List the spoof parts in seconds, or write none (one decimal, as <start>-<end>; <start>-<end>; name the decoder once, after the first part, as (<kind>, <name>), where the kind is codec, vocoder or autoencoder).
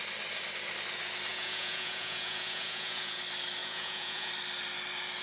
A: 1.3-3.2 (vocoder, Vocos); 3.6-4.3